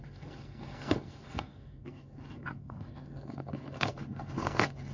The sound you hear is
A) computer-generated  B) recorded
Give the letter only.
A